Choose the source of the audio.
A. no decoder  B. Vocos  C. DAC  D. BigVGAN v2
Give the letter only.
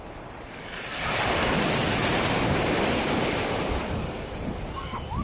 D